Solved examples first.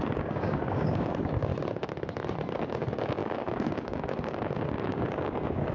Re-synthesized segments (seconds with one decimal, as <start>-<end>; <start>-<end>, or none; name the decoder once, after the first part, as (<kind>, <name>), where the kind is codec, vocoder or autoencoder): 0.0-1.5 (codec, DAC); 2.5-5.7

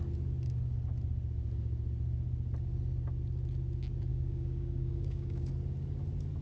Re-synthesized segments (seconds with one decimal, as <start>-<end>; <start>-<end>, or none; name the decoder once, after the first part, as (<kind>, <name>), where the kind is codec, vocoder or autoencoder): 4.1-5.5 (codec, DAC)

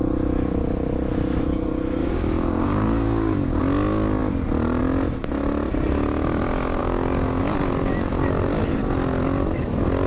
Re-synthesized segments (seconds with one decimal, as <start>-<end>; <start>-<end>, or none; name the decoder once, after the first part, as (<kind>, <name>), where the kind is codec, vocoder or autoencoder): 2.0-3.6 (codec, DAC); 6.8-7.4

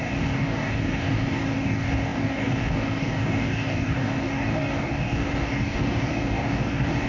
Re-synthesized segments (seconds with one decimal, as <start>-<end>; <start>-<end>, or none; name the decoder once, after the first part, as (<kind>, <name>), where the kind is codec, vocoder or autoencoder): 0.0-7.1 (codec, DAC)

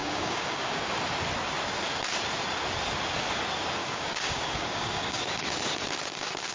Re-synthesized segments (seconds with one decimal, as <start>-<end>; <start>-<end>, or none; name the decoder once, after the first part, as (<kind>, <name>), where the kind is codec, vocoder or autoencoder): 0.0-1.0 (codec, DAC); 3.8-5.2

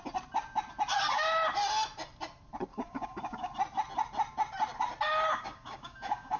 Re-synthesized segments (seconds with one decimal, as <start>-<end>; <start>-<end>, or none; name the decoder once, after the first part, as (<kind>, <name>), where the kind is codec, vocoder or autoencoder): 2.7-3.5 (codec, DAC); 5.3-6.4

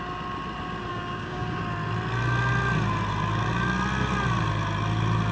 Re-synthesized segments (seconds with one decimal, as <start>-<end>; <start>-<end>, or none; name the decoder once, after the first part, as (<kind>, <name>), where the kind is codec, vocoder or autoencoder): 0.9-1.6 (codec, DAC)